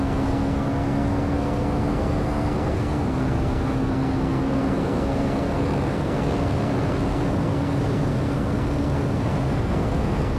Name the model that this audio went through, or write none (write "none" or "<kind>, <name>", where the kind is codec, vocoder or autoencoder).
codec, SNAC